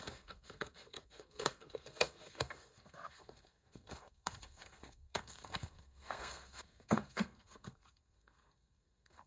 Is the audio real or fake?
fake